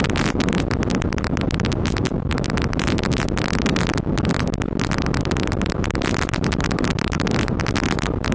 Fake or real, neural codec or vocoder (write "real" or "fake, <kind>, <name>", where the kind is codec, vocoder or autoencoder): real